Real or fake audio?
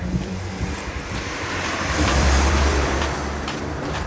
fake